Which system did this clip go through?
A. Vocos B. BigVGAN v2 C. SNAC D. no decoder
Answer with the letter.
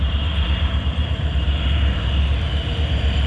B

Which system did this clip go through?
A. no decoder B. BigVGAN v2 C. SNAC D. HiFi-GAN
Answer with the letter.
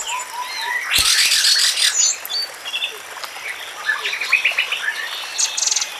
A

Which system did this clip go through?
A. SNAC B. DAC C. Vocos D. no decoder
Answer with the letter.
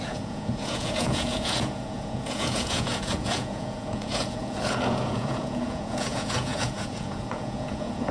C